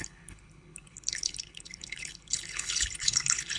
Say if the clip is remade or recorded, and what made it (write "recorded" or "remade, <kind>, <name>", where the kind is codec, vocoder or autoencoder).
remade, codec, HILCodec